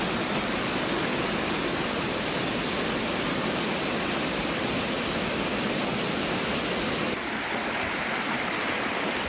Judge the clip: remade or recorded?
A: recorded